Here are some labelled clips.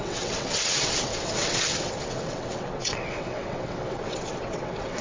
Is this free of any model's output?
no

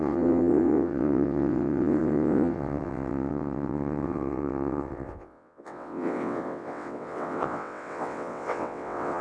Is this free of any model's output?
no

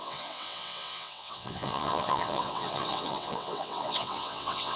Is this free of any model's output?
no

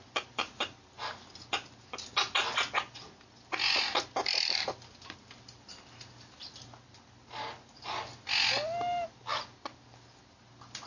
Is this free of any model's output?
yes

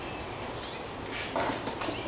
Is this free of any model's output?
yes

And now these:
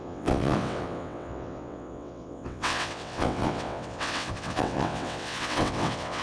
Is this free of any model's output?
no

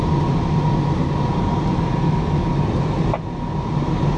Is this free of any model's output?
yes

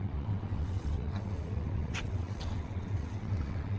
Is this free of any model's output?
no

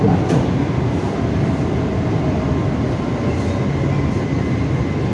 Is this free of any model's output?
yes